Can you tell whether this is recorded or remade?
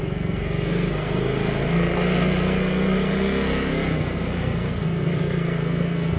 remade